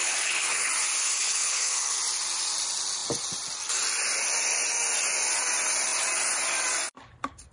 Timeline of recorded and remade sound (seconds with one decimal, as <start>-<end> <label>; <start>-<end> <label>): 0.0-0.7 remade; 0.7-1.2 recorded; 1.2-2.0 remade; 2.0-7.5 recorded